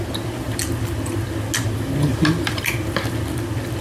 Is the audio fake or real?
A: real